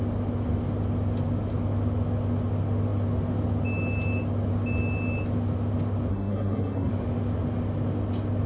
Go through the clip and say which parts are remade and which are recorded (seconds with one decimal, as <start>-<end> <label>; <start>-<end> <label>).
0.0-6.1 recorded; 6.1-6.9 remade; 6.9-8.5 recorded